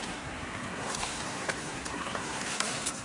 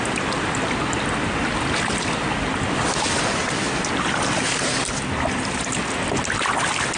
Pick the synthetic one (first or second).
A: first